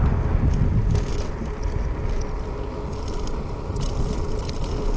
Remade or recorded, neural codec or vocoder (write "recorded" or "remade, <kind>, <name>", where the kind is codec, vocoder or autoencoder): recorded